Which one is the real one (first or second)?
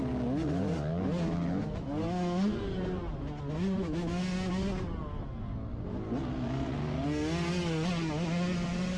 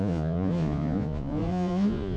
first